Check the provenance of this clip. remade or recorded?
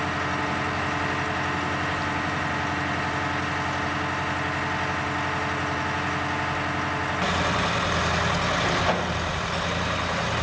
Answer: recorded